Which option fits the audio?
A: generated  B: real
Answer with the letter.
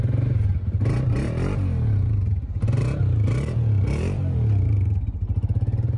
B